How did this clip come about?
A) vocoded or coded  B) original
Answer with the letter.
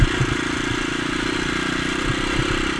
B